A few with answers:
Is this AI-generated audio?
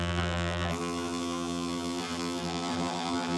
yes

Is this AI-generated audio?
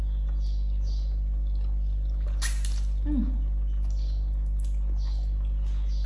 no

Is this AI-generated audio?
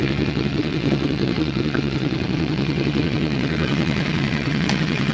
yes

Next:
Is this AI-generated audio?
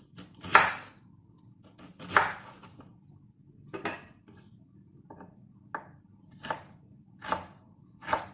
no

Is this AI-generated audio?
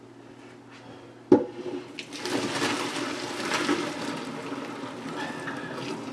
no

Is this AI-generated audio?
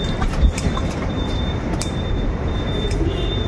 yes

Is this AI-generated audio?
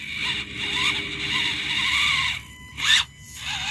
no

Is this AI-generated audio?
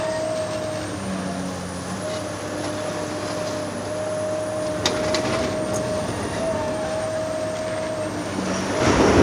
no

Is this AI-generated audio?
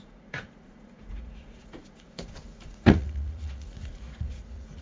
yes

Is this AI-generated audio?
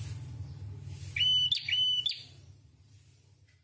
no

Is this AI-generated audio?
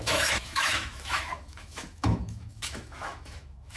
yes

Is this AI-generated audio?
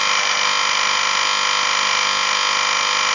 no